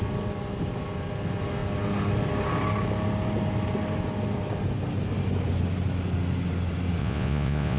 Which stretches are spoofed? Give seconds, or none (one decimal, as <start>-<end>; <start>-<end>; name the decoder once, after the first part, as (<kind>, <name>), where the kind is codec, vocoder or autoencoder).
7.0-7.8 (vocoder, Vocos)